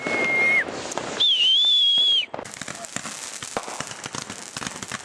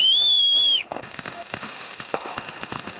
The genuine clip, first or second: first